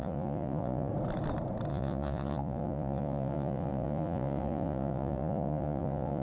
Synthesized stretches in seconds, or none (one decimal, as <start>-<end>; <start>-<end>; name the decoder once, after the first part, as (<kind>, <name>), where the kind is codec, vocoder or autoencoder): 0.0-0.9 (vocoder, Vocos); 1.7-6.2